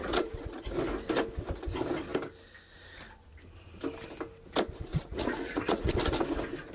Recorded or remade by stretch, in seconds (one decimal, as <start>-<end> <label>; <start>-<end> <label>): 0.0-0.5 remade; 0.5-4.9 recorded; 4.9-5.9 remade; 5.9-6.7 recorded